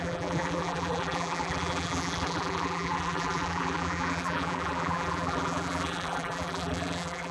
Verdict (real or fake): fake